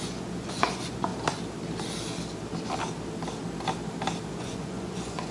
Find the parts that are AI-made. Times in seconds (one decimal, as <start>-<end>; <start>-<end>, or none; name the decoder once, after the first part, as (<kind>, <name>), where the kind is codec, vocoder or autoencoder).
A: 0.0-1.1 (vocoder, Vocos); 4.3-5.3